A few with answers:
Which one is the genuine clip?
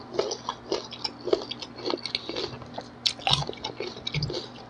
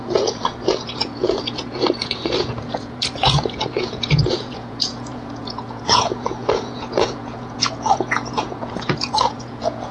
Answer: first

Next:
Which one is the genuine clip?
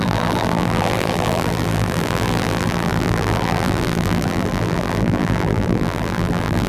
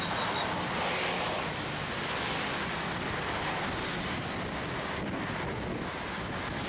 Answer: second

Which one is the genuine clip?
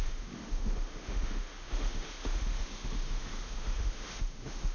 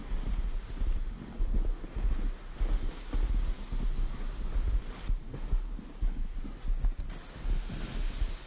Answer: second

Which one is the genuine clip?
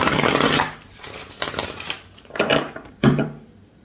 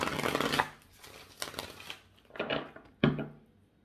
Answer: second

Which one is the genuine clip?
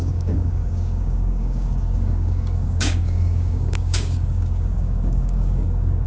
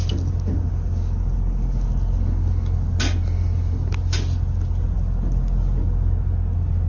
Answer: second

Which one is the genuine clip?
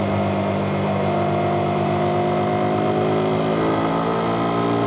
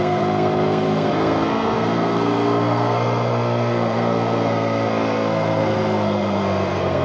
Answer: first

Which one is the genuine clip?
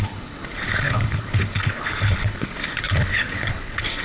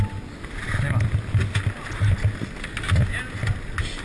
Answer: second